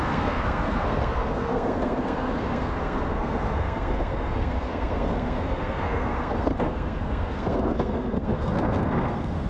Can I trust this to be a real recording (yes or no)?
no